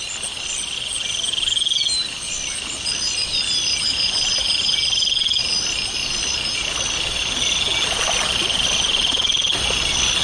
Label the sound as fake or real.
real